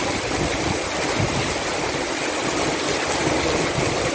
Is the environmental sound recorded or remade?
recorded